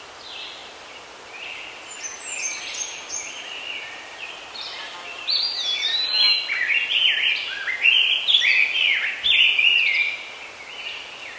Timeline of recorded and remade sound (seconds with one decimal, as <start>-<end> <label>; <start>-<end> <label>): 0.0-2.1 recorded; 2.1-6.1 remade; 6.1-11.4 recorded